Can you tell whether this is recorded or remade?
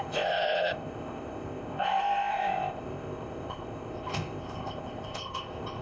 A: remade